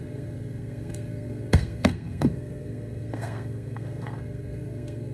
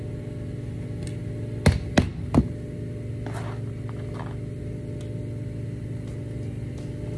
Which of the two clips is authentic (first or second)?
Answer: second